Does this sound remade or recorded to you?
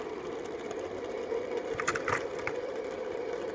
remade